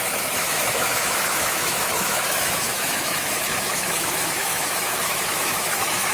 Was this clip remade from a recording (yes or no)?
yes